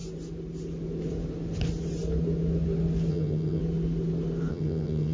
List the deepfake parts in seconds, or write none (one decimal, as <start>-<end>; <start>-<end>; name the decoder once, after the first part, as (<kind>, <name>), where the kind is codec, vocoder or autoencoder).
3.1-3.6 (vocoder, HiFi-GAN); 4.5-5.1

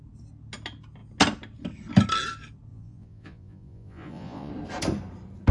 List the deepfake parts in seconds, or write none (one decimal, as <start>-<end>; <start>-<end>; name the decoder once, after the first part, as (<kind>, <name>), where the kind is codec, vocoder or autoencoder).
2.7-4.5 (vocoder, Vocos)

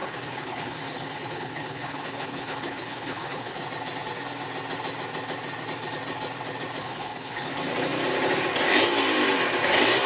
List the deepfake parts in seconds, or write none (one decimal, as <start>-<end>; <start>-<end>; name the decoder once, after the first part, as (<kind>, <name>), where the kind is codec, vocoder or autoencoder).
0.0-3.6 (codec, HILCodec); 6.8-7.5

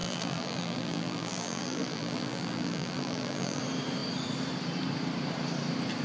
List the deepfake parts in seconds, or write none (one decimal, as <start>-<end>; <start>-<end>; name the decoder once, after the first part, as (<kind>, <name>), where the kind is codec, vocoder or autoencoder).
0.0-3.6 (vocoder, BigVGAN v2)

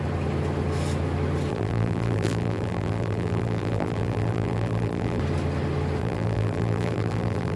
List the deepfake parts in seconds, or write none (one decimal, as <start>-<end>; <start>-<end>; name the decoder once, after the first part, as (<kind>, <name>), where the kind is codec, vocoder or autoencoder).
1.5-5.2 (vocoder, BigVGAN v2); 6.0-7.6

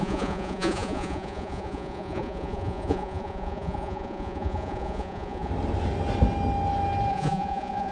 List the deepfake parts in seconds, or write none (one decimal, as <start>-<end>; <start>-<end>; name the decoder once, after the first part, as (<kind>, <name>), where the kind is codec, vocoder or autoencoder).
0.0-5.5 (vocoder, Vocos); 7.1-7.9

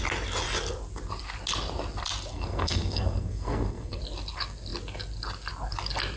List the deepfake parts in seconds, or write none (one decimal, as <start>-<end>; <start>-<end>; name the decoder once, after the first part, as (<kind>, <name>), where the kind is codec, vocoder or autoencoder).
2.3-4.0 (codec, SNAC)

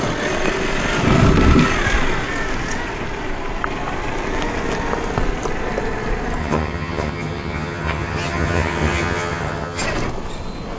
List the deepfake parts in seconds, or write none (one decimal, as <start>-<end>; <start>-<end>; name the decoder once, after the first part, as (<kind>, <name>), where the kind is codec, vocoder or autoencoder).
6.4-9.8 (vocoder, HiFi-GAN)